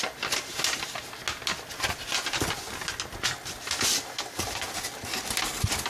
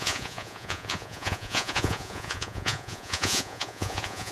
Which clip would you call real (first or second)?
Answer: first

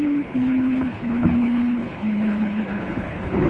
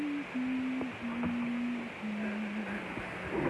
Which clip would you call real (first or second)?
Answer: second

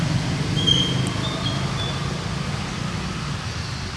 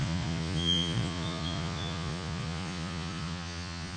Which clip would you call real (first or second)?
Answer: first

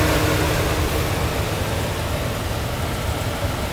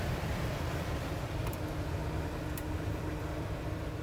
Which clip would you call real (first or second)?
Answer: first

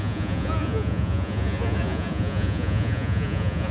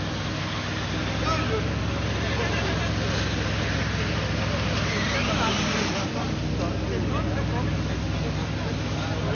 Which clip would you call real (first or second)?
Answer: second